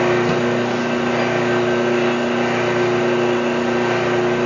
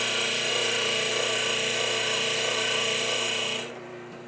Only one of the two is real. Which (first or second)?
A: first